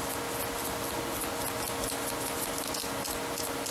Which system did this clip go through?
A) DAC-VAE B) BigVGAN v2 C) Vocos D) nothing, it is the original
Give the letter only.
D